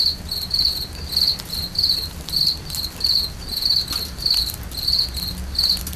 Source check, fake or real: real